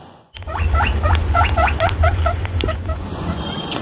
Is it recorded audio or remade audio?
remade